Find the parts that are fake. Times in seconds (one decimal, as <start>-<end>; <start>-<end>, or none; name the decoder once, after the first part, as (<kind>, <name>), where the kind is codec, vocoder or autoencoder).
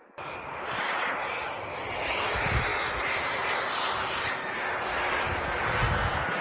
none